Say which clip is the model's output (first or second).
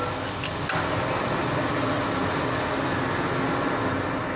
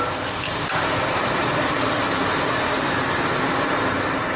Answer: second